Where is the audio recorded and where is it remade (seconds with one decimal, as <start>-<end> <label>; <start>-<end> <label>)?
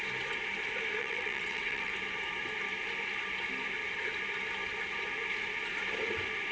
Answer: 0.0-1.0 recorded; 1.0-1.9 remade; 1.9-6.5 recorded